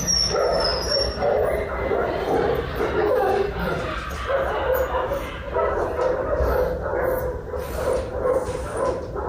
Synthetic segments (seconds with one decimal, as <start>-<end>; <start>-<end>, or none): 0.7-5.1; 6.9-8.0